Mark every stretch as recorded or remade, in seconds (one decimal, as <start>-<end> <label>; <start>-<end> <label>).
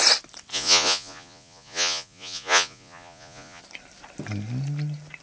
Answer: 0.0-0.5 recorded; 0.5-3.6 remade; 3.6-5.2 recorded